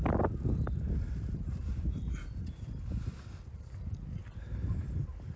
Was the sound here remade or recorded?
recorded